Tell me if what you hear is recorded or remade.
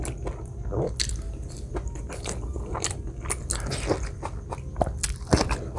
recorded